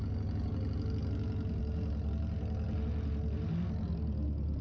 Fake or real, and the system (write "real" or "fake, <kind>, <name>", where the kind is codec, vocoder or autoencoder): real